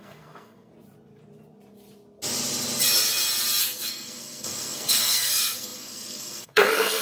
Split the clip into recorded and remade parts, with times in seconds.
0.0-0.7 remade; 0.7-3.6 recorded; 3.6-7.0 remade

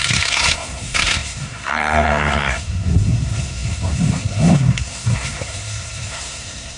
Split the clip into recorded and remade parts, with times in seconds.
0.0-6.8 remade

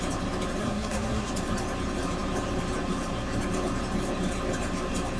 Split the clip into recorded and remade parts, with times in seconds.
0.0-0.6 recorded; 0.6-1.3 remade; 1.3-5.2 recorded

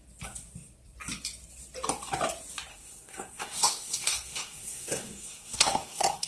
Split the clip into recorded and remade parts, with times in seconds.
0.0-2.7 recorded; 2.7-6.3 remade

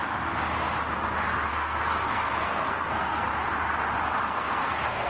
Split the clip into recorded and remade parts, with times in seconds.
0.0-1.5 recorded; 1.5-3.3 remade; 3.3-4.2 recorded; 4.2-5.1 remade

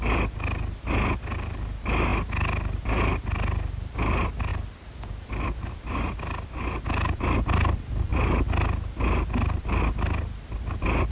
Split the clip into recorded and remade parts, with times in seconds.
0.0-11.1 recorded

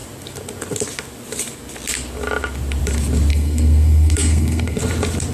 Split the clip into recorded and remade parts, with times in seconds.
0.0-3.3 recorded; 3.3-4.8 remade; 4.8-5.3 recorded

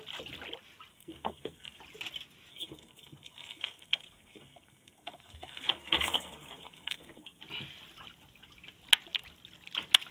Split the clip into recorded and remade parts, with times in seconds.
0.0-0.9 recorded; 0.9-1.8 remade; 1.8-2.5 recorded; 2.5-7.4 remade; 7.4-10.1 recorded